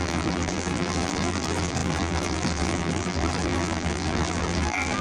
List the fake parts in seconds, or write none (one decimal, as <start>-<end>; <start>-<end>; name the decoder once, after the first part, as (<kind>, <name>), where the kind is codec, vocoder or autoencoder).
0.0-5.0 (vocoder, BigVGAN v2)